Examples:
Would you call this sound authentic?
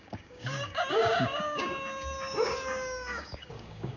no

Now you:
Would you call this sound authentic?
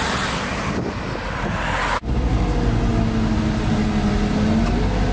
yes